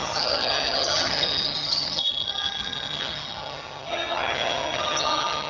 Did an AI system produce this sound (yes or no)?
yes